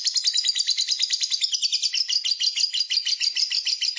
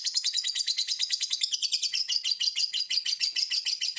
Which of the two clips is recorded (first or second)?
first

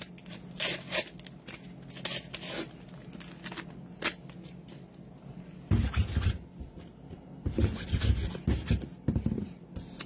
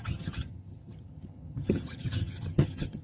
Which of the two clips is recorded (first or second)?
first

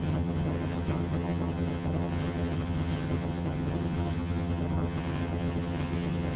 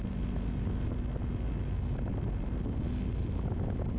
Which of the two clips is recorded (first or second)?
second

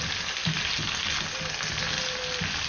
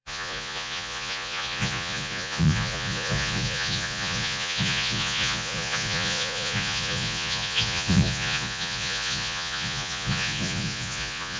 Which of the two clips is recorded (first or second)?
first